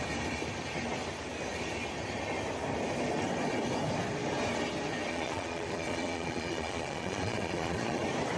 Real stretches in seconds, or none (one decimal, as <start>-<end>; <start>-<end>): 0.0-5.1; 8.0-8.4